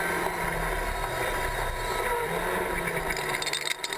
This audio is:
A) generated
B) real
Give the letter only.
B